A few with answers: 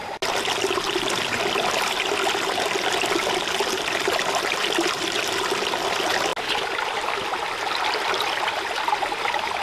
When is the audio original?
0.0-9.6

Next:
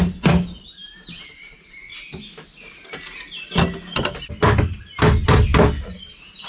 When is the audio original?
0.0-6.5